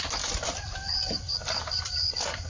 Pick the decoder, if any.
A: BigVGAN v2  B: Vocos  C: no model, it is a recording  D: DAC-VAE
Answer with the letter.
A